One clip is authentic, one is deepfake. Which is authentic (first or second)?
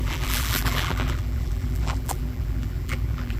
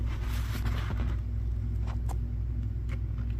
second